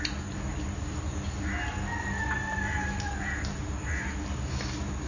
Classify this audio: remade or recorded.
recorded